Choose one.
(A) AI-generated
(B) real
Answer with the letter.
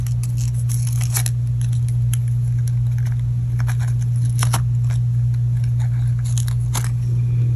B